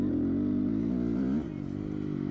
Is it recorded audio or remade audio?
recorded